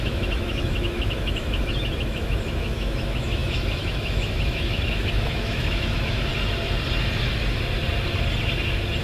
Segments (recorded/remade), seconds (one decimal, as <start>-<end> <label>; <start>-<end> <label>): 0.0-6.3 remade; 6.3-9.0 recorded